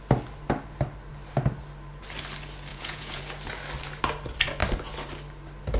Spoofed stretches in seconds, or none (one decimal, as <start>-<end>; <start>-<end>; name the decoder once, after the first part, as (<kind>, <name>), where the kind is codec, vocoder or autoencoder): 2.7-3.2 (vocoder, Vocos)